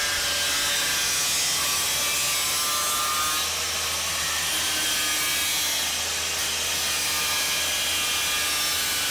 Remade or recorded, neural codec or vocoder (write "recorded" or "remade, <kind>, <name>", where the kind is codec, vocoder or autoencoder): recorded